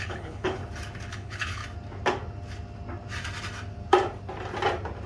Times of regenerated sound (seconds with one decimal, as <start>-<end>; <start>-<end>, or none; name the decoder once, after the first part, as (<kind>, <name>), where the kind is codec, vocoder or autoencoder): 0.0-0.6 (codec, HILCodec); 1.1-1.6